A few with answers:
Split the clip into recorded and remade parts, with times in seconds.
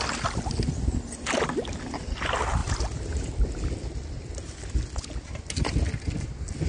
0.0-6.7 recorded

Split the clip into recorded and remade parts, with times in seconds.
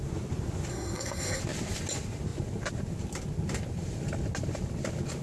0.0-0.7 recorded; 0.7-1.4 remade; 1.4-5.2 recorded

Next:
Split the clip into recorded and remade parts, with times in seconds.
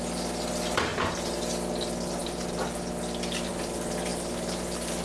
0.0-5.0 recorded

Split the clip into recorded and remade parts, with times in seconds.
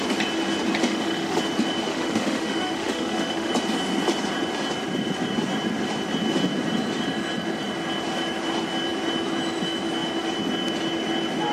0.0-0.8 recorded; 0.8-1.4 remade; 1.4-1.9 recorded; 1.9-3.5 remade; 3.5-11.5 recorded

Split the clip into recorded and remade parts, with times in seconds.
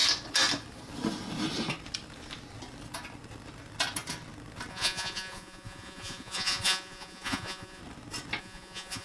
0.0-4.7 recorded; 4.7-7.8 remade; 7.8-8.4 recorded; 8.4-9.0 remade